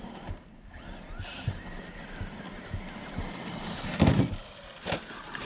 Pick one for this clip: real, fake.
real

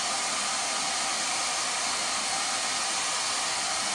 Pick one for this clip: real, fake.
real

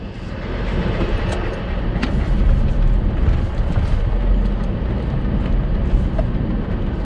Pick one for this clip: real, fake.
real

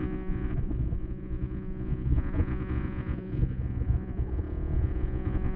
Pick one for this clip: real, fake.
fake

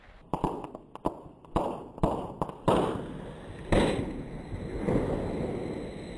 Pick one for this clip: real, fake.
real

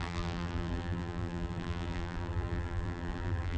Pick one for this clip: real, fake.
fake